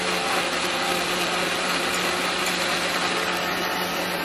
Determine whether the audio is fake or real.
real